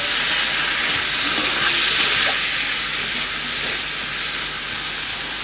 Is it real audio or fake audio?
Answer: real